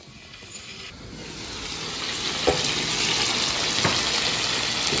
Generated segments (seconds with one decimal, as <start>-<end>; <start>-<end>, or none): none